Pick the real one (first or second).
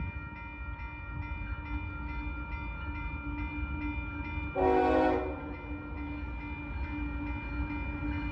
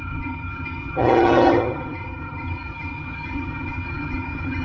first